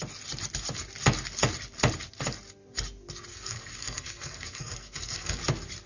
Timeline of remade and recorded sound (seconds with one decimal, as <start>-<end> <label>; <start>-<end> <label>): 0.0-3.3 recorded; 3.3-5.4 remade; 5.4-5.9 recorded